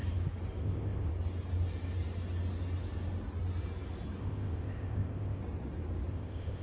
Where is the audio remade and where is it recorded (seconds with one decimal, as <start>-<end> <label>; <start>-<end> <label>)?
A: 0.0-0.6 recorded; 0.6-1.1 remade; 1.1-4.2 recorded; 4.2-5.4 remade; 5.4-6.1 recorded; 6.1-6.6 remade